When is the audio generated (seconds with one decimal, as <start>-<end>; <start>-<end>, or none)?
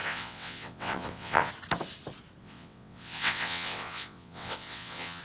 0.0-1.5; 2.4-5.2